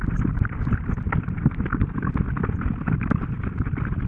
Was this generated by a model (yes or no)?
no